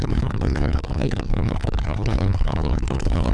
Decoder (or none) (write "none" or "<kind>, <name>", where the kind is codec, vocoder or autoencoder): codec, SNAC